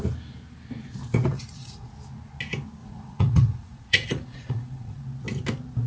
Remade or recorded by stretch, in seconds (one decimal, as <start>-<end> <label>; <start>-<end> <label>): 0.0-1.3 recorded; 1.3-1.9 remade; 1.9-2.8 recorded; 2.8-5.0 remade; 5.0-5.9 recorded

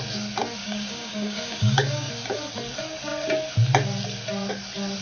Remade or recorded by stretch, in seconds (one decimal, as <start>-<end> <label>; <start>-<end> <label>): 0.0-0.6 recorded; 0.6-2.1 remade; 2.1-5.0 recorded

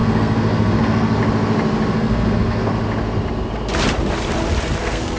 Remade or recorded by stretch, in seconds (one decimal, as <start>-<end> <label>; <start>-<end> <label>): 0.0-1.2 remade; 1.2-1.9 recorded; 1.9-2.7 remade; 2.7-4.8 recorded; 4.8-5.2 remade

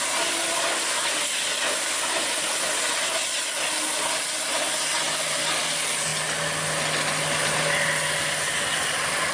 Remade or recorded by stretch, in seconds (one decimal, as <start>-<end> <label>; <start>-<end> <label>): 0.0-9.3 recorded